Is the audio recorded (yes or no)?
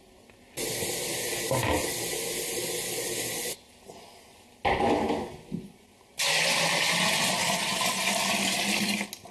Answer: yes